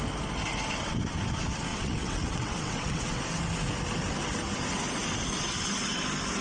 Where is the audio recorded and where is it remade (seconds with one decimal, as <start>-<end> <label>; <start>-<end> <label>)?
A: 0.0-1.7 recorded; 1.7-3.2 remade; 3.2-6.4 recorded